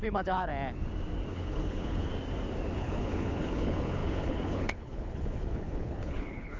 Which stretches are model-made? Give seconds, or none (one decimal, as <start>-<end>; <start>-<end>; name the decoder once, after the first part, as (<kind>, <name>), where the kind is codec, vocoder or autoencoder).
0.0-0.5 (codec, HILCodec); 1.3-2.1; 2.8-6.6